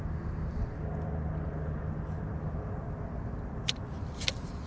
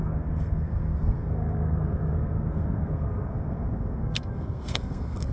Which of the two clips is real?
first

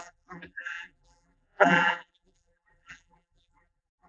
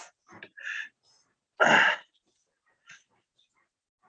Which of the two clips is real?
second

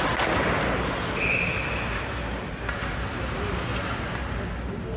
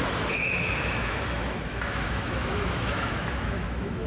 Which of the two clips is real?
first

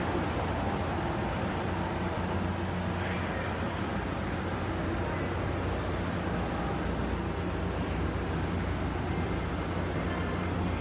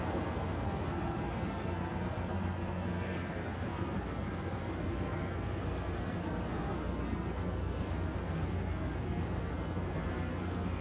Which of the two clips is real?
first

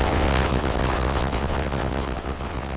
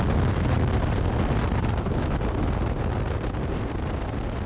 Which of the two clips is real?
second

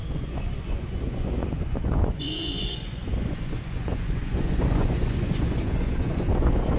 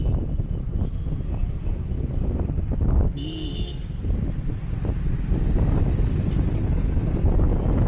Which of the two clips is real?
second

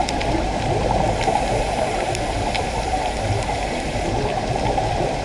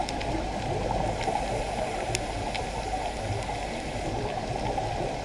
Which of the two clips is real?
second